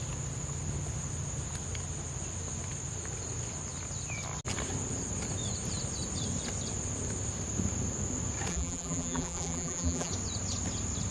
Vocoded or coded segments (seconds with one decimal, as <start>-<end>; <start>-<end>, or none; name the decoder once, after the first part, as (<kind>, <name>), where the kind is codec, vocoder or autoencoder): 8.5-10.1 (vocoder, BigVGAN v2)